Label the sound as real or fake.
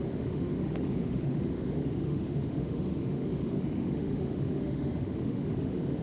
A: fake